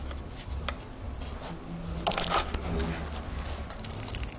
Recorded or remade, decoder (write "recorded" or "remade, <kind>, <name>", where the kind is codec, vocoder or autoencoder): recorded